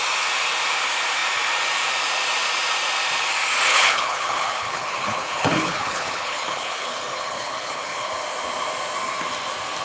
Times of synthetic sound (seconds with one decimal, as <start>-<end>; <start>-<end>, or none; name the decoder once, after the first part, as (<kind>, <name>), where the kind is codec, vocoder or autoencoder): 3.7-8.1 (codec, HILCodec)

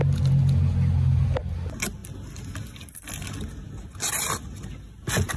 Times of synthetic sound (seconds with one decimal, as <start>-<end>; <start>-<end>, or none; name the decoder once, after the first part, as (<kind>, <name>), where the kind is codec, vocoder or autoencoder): none

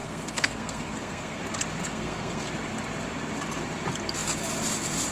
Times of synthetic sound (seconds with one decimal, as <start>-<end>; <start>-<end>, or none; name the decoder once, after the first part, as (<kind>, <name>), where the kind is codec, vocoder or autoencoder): 0.0-1.4 (codec, SNAC); 1.8-2.5